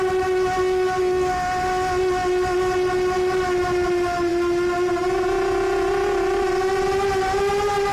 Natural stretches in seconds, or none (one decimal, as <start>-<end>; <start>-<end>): 0.0-0.6; 1.3-7.9